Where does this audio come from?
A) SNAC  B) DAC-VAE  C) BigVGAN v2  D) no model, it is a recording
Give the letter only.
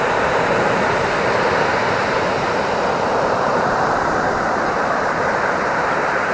C